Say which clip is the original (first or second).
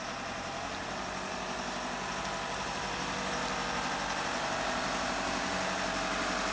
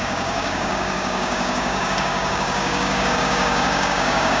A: first